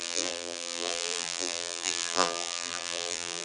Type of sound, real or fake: fake